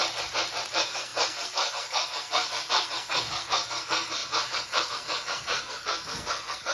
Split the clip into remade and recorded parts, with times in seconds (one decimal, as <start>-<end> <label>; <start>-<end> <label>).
0.0-0.7 recorded; 0.7-6.7 remade